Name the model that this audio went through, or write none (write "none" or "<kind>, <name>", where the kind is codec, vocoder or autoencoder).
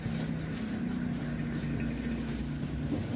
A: none